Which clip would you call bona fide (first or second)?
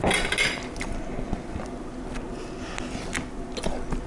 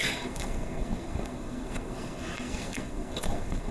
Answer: first